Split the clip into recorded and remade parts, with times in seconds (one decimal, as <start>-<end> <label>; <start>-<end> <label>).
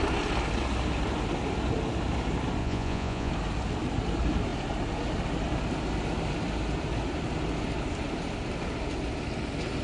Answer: 0.0-2.6 recorded; 2.6-3.3 remade; 3.3-9.8 recorded